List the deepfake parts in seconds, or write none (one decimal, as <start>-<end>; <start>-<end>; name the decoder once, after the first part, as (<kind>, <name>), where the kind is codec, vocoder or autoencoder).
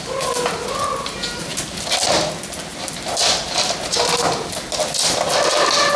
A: 1.5-2.1 (vocoder, BigVGAN v2); 2.7-3.8